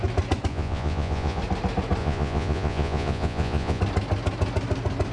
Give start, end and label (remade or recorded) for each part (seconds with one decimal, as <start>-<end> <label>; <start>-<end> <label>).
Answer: 0.0-0.5 recorded; 0.5-1.4 remade; 1.4-2.0 recorded; 2.0-3.8 remade; 3.8-5.1 recorded